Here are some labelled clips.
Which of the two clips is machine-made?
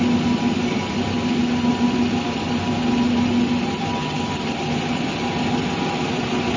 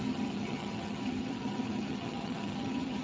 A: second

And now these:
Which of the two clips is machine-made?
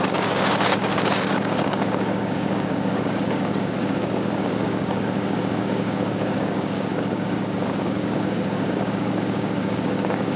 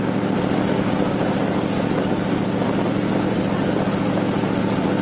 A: first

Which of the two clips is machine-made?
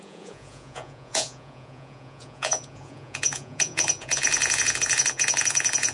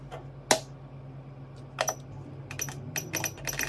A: first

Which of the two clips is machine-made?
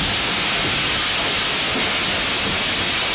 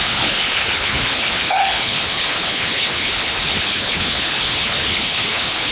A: second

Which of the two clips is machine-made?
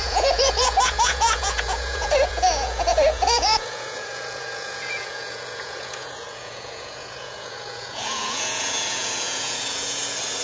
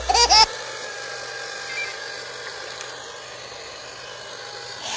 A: first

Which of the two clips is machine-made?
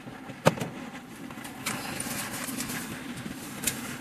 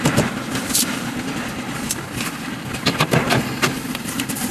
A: second